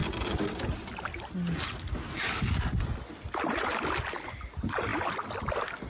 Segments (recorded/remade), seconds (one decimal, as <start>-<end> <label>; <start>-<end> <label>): 0.0-5.9 recorded